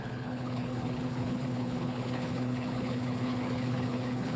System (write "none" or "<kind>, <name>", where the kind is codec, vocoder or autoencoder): codec, HILCodec